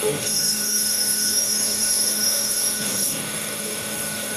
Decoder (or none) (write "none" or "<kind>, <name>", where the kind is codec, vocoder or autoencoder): codec, DAC